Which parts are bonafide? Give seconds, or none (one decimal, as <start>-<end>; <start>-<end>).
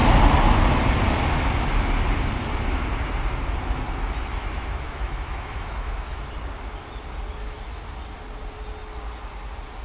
0.0-4.3; 6.3-7.4; 7.9-9.8